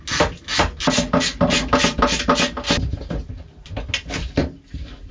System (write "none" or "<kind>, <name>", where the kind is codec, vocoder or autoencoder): none